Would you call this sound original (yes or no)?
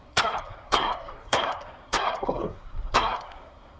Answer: no